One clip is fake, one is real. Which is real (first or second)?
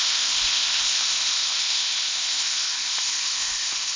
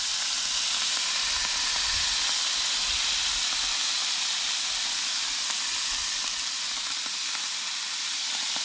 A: second